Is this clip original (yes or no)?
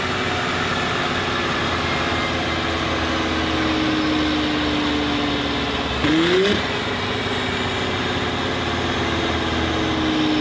yes